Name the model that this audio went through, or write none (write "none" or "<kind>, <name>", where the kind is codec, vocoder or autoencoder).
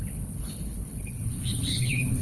codec, HILCodec